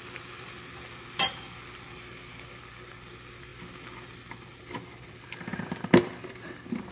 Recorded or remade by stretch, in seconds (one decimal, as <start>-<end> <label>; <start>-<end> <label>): 0.0-6.9 recorded